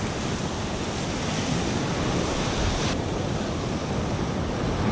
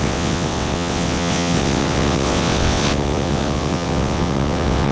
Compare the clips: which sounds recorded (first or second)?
first